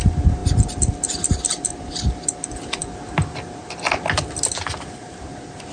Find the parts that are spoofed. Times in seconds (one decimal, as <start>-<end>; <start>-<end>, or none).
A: none